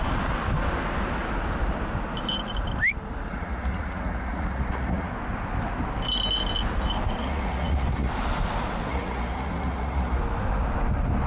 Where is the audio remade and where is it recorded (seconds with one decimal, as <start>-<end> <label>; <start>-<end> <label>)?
0.0-3.3 recorded; 3.3-5.1 remade; 5.1-7.2 recorded; 7.2-8.1 remade; 8.1-8.9 recorded; 8.9-10.2 remade; 10.2-11.3 recorded